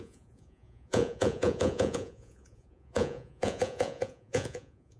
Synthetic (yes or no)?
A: yes